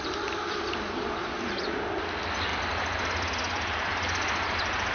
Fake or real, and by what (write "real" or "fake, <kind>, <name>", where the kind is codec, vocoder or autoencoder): real